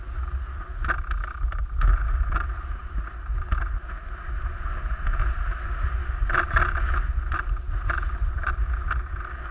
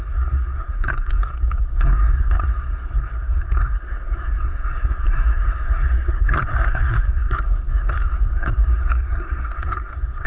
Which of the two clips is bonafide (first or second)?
first